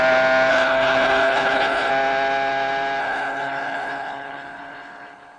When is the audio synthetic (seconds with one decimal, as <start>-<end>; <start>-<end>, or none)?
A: 0.5-1.9; 3.0-5.4